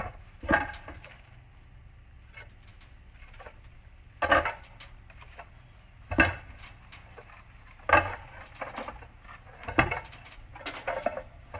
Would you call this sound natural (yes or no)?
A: yes